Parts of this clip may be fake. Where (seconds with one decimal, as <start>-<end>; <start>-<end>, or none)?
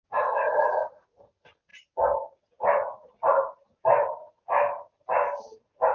none